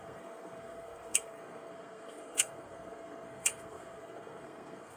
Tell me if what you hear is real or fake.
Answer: fake